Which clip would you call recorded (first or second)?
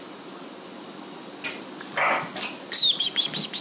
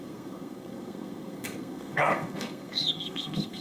first